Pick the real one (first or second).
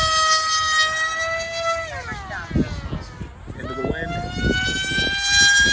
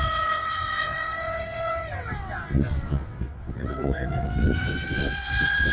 first